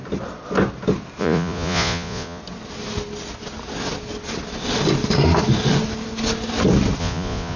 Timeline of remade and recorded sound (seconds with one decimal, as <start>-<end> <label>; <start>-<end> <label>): 0.0-1.2 recorded; 1.2-2.4 remade; 2.4-7.0 recorded; 7.0-7.6 remade